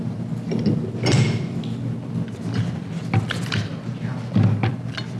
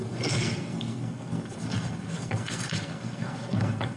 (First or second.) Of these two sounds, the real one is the first